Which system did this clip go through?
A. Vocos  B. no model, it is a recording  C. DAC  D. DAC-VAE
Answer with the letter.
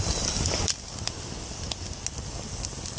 B